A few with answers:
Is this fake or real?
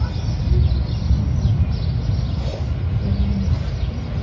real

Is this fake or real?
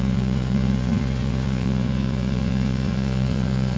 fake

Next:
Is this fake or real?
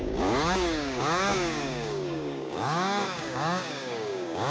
fake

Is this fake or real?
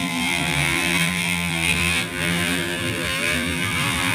fake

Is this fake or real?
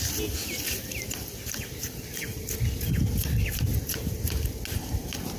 real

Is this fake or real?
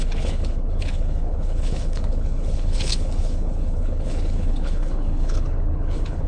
fake